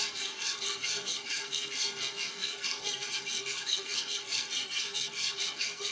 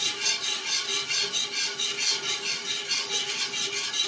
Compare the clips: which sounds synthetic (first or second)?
first